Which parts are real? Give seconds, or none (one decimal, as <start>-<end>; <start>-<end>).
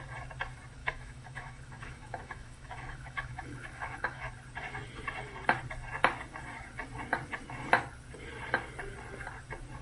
0.0-0.8; 4.3-9.8